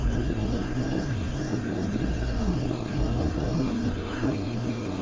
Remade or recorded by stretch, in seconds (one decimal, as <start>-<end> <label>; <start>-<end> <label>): 0.0-5.0 remade